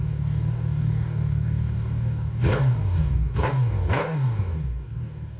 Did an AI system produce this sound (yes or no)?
yes